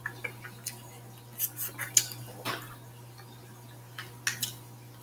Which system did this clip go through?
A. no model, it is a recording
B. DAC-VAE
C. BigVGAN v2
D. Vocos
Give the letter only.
A